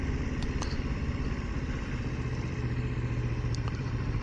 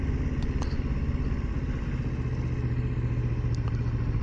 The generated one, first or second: first